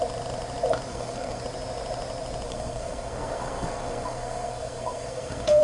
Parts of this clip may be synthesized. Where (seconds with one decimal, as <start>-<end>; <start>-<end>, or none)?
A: 0.9-1.4; 2.5-5.6